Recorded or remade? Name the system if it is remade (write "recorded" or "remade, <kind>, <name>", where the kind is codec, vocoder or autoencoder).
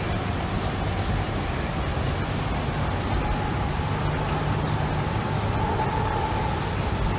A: recorded